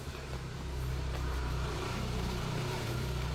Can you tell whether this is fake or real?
fake